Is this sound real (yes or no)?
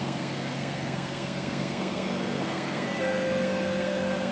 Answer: no